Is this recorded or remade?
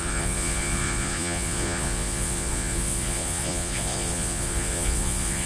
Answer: remade